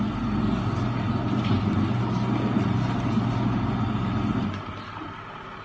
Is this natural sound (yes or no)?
yes